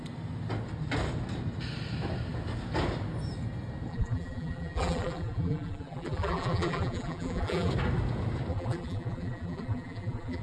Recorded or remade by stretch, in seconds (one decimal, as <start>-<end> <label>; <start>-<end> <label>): 0.0-3.9 recorded; 3.9-7.7 remade; 7.7-8.5 recorded; 8.5-10.4 remade